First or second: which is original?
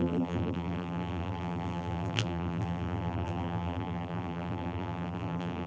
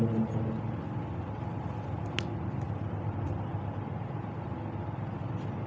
second